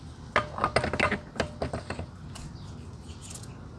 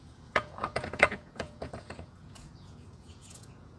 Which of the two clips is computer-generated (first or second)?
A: second